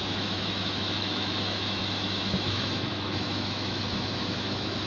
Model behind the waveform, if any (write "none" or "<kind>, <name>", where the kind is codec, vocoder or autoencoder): autoencoder, DAC-VAE